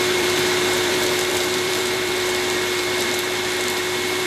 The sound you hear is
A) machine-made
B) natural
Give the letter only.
A